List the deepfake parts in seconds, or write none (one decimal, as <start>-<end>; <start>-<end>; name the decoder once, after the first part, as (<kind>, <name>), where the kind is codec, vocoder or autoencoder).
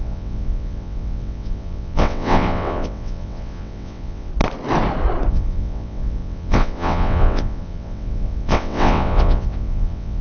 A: 0.0-4.3 (vocoder, WaveNeXt); 5.3-10.2